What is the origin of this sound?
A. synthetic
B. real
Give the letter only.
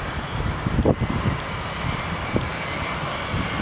B